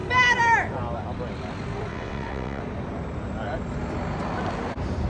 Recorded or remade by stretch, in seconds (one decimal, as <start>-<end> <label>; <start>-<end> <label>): 0.0-1.9 recorded; 1.9-2.6 remade; 2.6-5.1 recorded